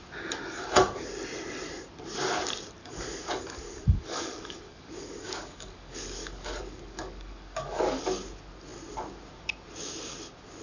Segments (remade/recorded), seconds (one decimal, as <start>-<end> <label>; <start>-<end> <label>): 0.0-2.8 recorded; 2.8-8.0 remade; 8.0-10.6 recorded